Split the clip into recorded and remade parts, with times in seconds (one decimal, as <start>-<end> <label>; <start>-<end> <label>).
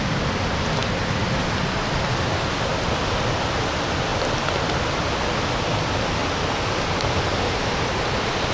0.0-8.5 recorded